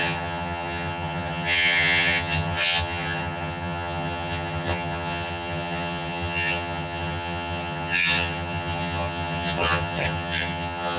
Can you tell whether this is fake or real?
fake